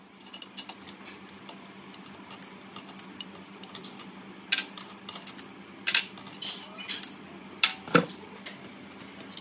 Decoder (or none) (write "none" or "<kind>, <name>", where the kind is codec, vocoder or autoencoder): none